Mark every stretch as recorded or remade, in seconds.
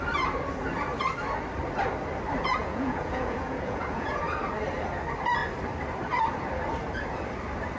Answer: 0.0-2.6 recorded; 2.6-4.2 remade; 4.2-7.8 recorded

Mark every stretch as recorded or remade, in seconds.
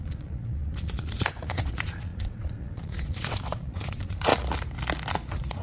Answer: 0.0-4.3 remade; 4.3-5.1 recorded; 5.1-5.6 remade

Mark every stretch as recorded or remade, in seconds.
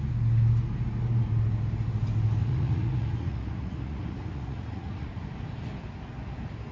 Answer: 0.0-2.4 recorded; 2.4-5.2 remade; 5.2-6.7 recorded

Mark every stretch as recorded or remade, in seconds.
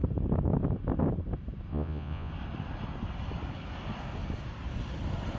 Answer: 0.0-1.7 recorded; 1.7-2.3 remade; 2.3-5.4 recorded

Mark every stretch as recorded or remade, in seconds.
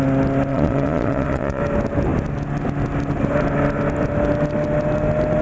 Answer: 0.0-0.5 recorded; 0.5-1.6 remade; 1.6-5.4 recorded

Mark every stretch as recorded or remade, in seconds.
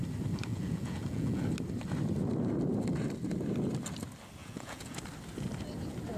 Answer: 0.0-0.5 recorded; 0.5-1.4 remade; 1.4-4.4 recorded; 4.4-5.0 remade; 5.0-6.2 recorded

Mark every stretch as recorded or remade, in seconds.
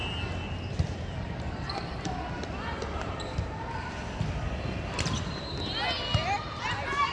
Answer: 0.0-7.1 recorded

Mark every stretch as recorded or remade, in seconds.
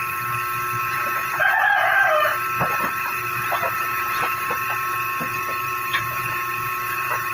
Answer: 0.0-0.8 recorded; 0.8-1.9 remade; 1.9-3.7 recorded; 3.7-7.3 remade